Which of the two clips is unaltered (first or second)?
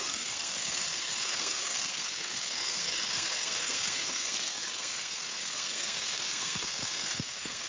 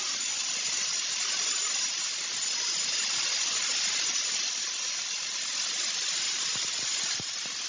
second